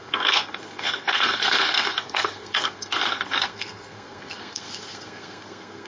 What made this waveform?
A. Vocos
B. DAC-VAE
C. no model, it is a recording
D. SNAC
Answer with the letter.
D